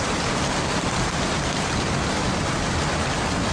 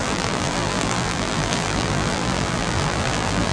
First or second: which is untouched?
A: first